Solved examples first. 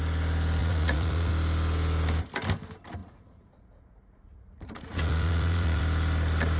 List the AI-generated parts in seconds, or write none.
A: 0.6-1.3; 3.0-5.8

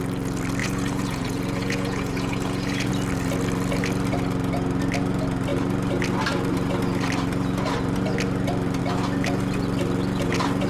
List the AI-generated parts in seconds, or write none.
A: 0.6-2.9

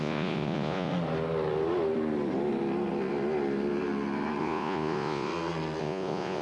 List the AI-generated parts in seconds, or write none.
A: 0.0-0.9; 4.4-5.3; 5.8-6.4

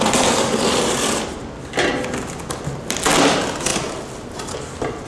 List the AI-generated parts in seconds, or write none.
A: none

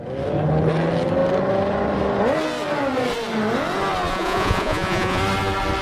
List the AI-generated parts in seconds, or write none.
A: 4.1-5.2